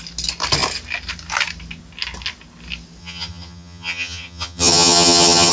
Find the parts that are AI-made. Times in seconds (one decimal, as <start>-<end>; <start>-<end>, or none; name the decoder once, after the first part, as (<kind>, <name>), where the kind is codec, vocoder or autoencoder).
3.0-5.5 (vocoder, HiFi-GAN)

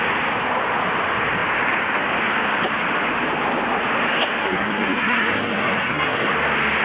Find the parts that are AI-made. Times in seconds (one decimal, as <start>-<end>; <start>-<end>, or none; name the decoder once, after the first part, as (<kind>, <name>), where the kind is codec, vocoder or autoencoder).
4.4-6.3 (codec, SNAC)

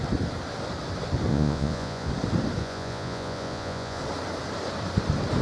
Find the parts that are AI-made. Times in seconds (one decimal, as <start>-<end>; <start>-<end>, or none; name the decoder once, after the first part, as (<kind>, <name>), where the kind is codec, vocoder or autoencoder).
1.3-2.1 (vocoder, Vocos); 2.6-4.0

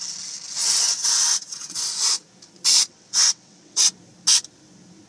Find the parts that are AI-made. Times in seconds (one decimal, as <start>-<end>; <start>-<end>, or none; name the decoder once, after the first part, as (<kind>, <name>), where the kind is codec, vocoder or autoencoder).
0.6-1.9 (vocoder, WaveNeXt); 2.9-3.9

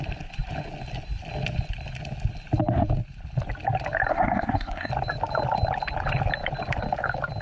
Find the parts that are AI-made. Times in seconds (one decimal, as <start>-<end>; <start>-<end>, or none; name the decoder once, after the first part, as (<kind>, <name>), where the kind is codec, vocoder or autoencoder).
4.1-4.9 (codec, SNAC)

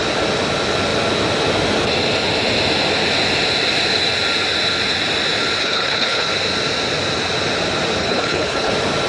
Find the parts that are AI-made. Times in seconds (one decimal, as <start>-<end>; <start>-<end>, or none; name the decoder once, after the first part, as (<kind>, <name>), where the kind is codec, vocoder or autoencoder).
5.6-6.3 (codec, HILCodec); 8.0-8.7

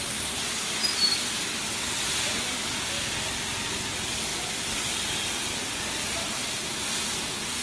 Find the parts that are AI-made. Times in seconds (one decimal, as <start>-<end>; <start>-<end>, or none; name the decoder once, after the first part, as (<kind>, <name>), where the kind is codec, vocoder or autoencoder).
none

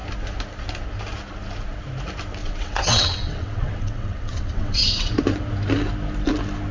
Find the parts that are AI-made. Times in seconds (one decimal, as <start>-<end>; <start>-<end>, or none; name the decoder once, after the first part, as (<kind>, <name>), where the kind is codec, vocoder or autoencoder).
2.4-5.1 (vocoder, WaveNeXt)